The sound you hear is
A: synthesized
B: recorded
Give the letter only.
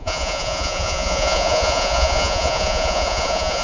A